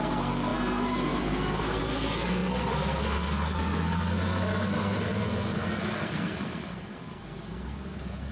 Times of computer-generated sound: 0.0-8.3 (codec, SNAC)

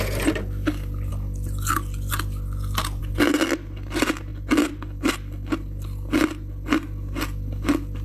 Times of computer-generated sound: none

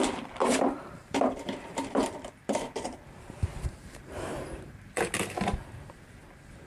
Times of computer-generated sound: 0.4-2.3 (vocoder, BigVGAN v2); 3.5-5.0

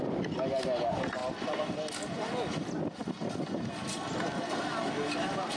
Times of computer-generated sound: none

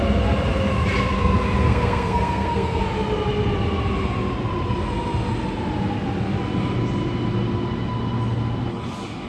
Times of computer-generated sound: 1.6-2.8 (codec, SNAC)

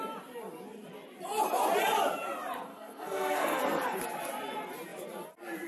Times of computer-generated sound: 2.7-3.6 (codec, SNAC)

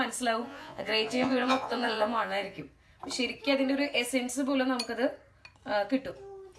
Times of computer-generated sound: 0.5-2.6 (vocoder, Vocos)

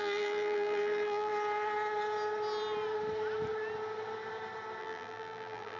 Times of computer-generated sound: 0.0-1.3 (vocoder, BigVGAN v2); 4.8-5.8